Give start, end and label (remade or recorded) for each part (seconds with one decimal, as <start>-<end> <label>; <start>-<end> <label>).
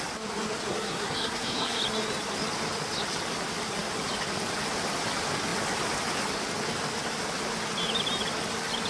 0.0-0.7 recorded; 0.7-1.8 remade; 1.8-8.9 recorded